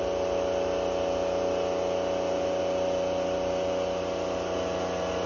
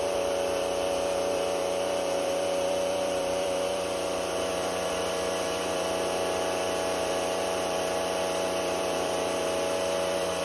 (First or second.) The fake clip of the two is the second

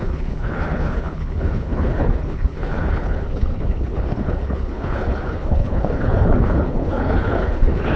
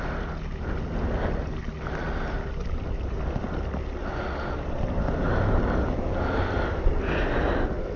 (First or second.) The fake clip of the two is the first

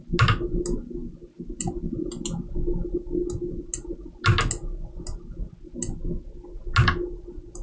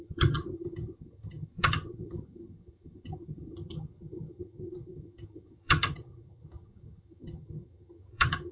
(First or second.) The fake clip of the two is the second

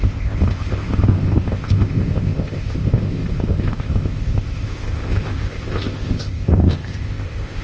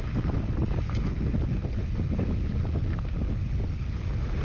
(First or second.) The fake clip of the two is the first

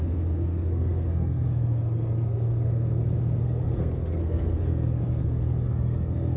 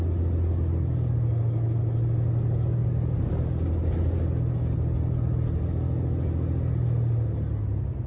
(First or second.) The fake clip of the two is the first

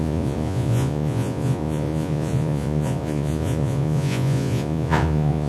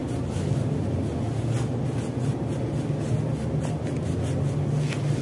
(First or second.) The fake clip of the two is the first